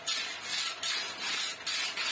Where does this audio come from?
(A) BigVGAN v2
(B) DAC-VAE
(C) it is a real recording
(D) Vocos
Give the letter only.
C